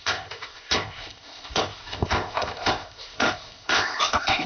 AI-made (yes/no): yes